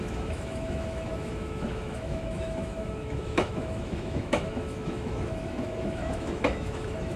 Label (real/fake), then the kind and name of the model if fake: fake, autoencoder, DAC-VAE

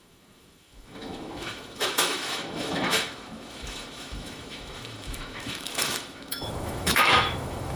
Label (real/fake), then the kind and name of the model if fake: fake, autoencoder, DAC-VAE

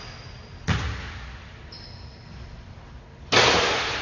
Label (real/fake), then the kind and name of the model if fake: real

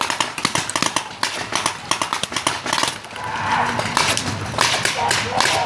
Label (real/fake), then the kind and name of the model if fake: real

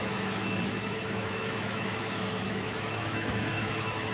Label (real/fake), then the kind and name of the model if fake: fake, autoencoder, DAC-VAE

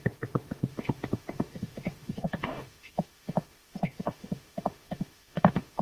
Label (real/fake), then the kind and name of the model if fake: fake, autoencoder, DAC-VAE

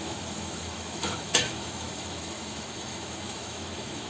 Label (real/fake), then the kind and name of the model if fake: fake, autoencoder, DAC-VAE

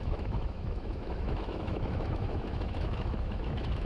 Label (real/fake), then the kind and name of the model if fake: fake, autoencoder, DAC-VAE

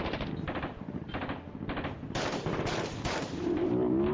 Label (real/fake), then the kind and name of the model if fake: real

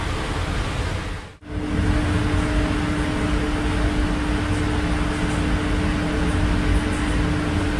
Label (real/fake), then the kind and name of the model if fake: real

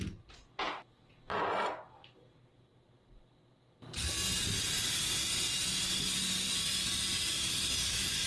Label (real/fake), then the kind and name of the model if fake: real